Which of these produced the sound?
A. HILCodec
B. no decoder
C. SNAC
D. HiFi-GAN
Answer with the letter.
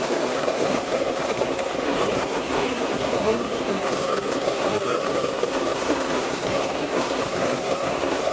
C